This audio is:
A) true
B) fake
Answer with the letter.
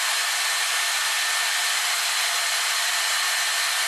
A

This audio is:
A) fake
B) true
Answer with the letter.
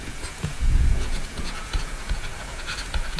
A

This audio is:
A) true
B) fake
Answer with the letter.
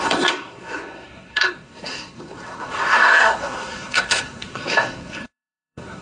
B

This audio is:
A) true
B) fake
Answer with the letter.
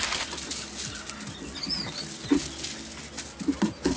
A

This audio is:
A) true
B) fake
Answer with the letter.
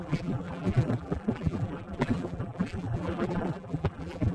B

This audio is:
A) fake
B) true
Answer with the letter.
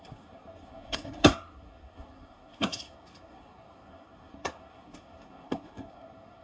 A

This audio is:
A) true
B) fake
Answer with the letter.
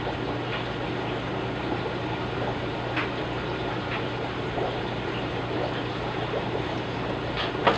A